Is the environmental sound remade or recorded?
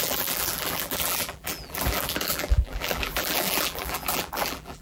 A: remade